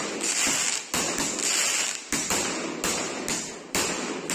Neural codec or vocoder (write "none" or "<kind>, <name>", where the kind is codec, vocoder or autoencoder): none